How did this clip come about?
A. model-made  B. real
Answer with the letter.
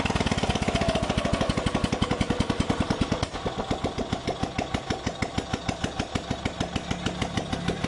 B